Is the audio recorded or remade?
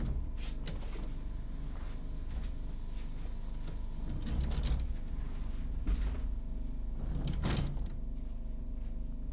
recorded